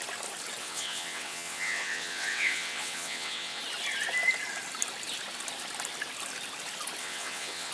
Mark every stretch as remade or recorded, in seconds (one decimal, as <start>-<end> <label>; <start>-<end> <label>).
0.0-0.6 recorded; 0.6-3.6 remade; 3.6-7.0 recorded; 7.0-7.7 remade